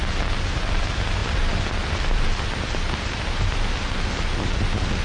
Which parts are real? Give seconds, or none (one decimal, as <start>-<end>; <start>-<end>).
0.0-5.0